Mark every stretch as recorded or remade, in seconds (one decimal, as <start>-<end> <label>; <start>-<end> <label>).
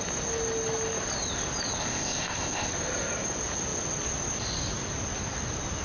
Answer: 0.0-1.8 recorded; 1.8-2.7 remade; 2.7-5.8 recorded